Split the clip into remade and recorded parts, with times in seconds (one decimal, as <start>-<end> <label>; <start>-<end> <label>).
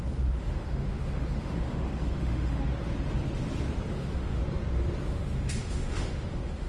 0.0-2.6 remade; 2.6-3.9 recorded; 3.9-4.4 remade; 4.4-5.0 recorded; 5.0-6.7 remade